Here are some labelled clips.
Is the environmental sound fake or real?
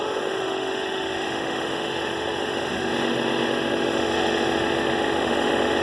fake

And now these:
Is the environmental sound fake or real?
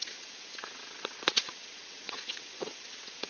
fake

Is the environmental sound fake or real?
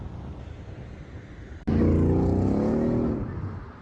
real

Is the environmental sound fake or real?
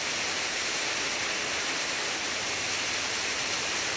fake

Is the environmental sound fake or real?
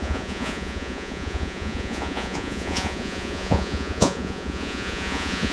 fake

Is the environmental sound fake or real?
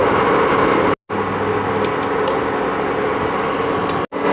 real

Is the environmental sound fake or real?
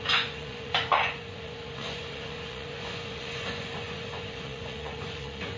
fake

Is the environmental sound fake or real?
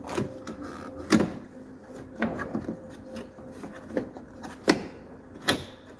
real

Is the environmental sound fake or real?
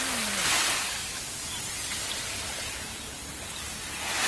real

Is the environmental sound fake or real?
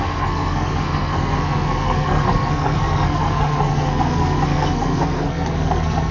fake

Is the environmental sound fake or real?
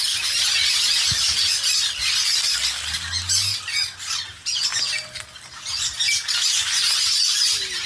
real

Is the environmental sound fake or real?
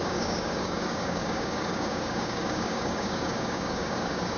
fake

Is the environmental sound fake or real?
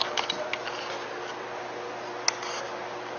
real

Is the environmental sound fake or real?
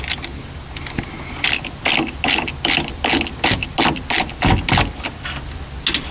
real